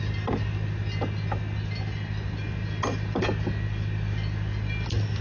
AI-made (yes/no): no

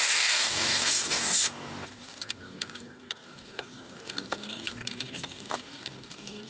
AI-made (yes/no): yes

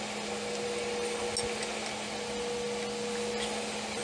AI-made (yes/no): no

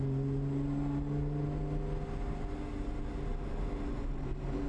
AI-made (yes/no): no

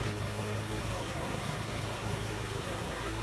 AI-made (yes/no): yes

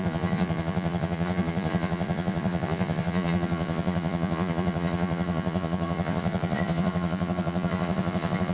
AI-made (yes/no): yes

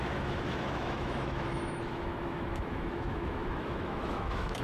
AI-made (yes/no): yes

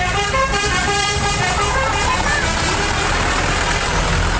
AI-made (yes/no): yes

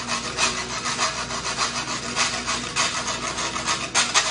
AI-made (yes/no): no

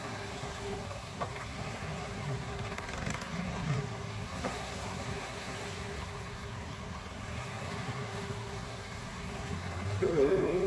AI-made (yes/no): yes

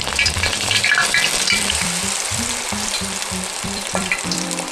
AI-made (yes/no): yes